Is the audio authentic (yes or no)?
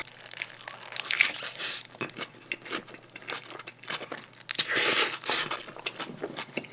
yes